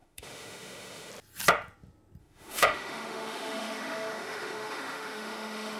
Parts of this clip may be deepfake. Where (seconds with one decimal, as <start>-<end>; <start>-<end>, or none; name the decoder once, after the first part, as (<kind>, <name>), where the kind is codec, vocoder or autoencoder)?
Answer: 0.0-1.1 (autoencoder, DAC-VAE); 2.2-5.8